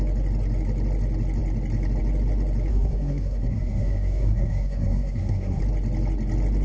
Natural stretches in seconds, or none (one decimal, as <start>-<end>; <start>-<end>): 0.0-2.7; 5.6-6.6